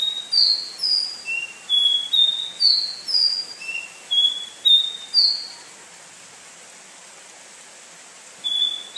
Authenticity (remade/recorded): recorded